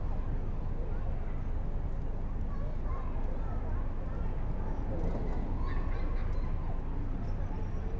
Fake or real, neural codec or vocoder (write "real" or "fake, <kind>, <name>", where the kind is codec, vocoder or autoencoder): real